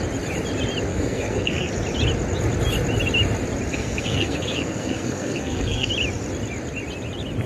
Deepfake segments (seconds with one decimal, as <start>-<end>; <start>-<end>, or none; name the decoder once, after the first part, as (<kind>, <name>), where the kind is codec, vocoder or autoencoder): 0.9-1.7 (codec, SNAC); 3.7-5.9